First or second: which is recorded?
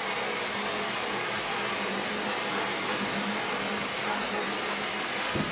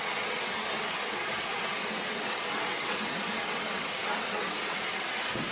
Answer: first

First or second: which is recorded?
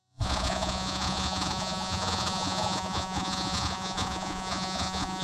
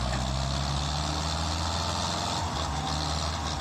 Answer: second